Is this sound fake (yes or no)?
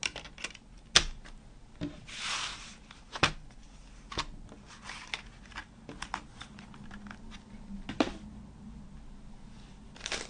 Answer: no